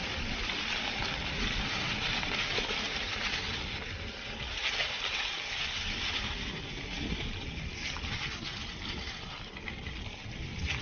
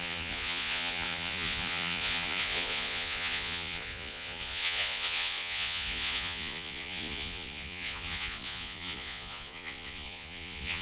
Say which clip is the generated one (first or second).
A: second